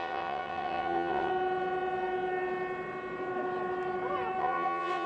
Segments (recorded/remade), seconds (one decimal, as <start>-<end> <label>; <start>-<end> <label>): 0.0-1.3 remade; 1.3-4.4 recorded; 4.4-5.1 remade